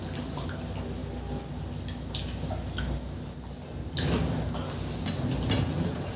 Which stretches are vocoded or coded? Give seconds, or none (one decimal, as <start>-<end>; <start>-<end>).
1.0-2.1